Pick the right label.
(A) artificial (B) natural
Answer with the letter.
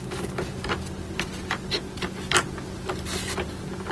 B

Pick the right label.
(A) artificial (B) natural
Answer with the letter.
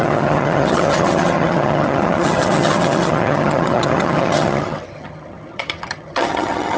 A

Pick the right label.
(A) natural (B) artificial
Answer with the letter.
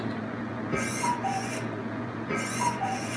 B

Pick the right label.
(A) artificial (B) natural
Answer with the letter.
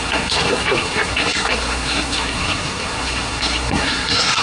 A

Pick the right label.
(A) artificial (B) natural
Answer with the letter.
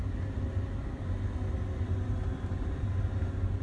B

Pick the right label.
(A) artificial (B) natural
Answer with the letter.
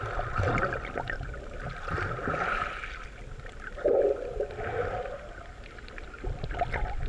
B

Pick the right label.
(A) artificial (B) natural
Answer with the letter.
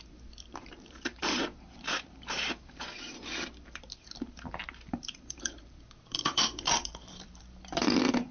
A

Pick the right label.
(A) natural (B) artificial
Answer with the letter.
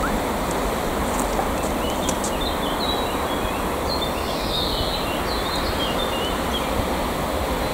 A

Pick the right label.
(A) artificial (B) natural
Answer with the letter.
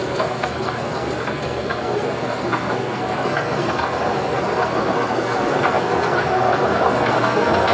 A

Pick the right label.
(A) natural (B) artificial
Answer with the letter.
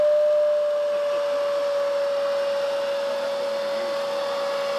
A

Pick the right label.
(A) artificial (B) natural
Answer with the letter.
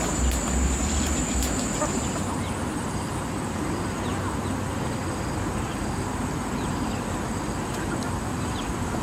B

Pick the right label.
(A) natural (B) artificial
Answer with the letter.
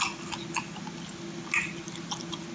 A